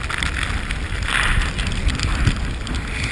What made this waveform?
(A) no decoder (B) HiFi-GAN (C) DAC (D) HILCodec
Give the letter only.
A